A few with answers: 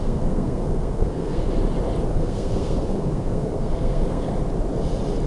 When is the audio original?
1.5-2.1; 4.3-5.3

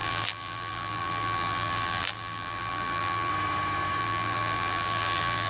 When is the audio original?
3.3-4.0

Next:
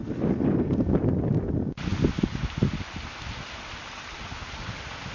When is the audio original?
0.0-5.1

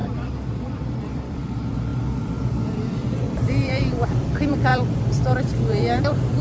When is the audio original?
1.9-2.5

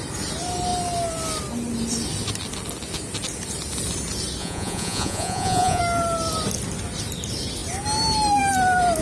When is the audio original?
0.0-4.4; 5.8-9.0